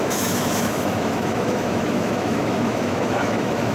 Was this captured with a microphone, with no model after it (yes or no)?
no